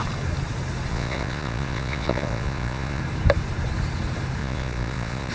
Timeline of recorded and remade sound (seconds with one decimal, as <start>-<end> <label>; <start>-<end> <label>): 0.0-0.9 recorded; 0.9-3.0 remade; 3.0-4.4 recorded; 4.4-5.3 remade